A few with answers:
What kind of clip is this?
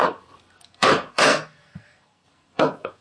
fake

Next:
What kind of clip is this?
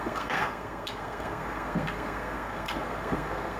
fake